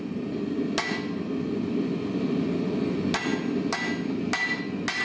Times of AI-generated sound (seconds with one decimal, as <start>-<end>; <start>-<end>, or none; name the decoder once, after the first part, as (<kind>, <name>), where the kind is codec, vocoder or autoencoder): none